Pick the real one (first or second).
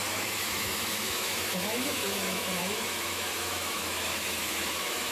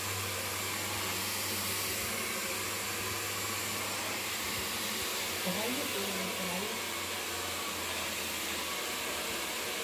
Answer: second